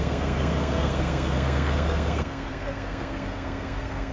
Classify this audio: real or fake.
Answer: fake